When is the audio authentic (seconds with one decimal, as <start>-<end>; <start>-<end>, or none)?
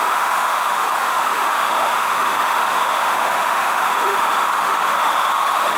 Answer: none